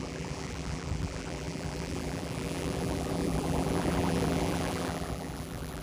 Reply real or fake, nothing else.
fake